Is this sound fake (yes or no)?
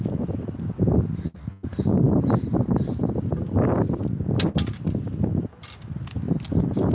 no